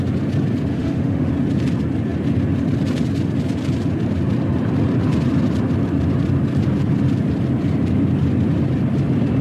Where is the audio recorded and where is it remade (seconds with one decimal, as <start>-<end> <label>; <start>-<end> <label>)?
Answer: 0.0-0.7 recorded; 0.7-1.3 remade; 1.3-9.4 recorded

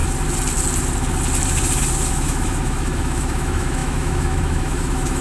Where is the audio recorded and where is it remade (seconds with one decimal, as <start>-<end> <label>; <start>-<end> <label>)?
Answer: 0.0-2.1 recorded; 2.1-5.2 remade

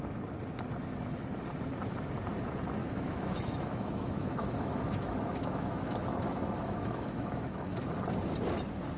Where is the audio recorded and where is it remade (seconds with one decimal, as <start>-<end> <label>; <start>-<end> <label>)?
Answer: 0.0-2.8 recorded; 2.8-8.0 remade; 8.0-9.0 recorded

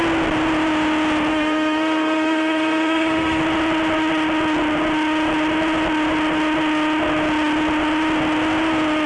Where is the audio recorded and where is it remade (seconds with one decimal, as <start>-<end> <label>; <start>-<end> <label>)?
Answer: 0.0-1.3 recorded; 1.3-3.4 remade; 3.4-9.1 recorded